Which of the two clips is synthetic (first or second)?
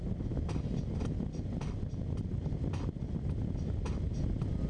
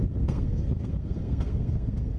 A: second